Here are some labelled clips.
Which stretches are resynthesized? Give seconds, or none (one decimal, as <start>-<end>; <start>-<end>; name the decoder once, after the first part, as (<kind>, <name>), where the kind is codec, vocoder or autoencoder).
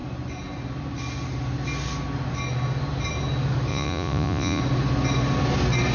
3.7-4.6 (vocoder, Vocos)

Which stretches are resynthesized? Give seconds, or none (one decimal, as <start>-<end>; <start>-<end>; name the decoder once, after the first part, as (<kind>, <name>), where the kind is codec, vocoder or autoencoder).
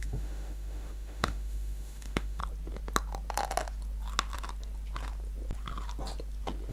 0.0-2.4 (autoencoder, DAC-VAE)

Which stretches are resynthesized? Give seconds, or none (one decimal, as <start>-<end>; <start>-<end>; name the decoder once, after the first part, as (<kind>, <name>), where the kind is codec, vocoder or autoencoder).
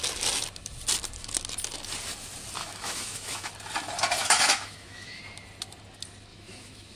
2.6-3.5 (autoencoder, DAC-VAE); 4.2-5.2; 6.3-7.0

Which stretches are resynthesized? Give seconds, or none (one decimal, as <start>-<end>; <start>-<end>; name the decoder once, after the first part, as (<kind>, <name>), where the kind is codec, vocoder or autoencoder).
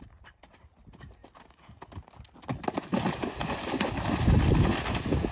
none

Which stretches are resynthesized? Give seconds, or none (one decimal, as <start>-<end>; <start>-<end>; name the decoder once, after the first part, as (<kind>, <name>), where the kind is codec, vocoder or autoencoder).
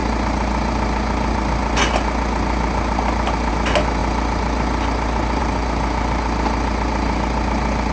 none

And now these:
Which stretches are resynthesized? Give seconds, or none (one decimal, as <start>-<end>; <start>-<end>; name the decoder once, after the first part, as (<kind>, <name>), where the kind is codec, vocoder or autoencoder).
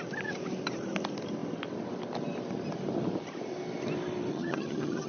4.3-5.1 (vocoder, HiFi-GAN)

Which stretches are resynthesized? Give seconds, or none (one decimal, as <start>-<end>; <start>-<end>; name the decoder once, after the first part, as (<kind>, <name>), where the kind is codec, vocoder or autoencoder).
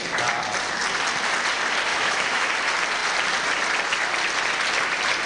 1.9-2.5 (autoencoder, DAC-VAE)